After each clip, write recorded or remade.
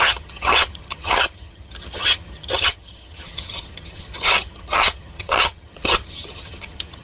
remade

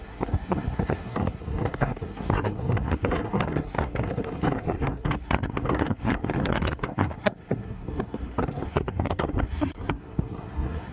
remade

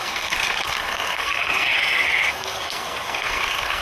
remade